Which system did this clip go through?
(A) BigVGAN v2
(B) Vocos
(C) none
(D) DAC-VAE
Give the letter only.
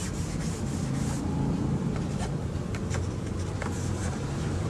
C